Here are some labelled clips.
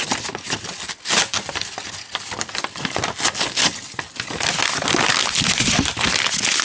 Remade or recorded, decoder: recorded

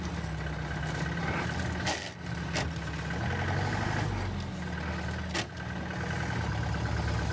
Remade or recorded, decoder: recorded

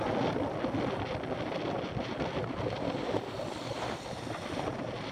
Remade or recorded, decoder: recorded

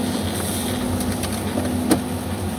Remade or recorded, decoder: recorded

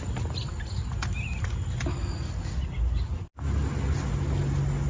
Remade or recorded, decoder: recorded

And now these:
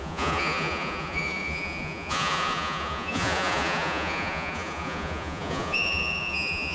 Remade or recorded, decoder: remade, vocoder, Vocos